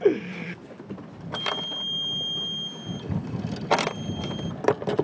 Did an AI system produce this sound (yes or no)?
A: no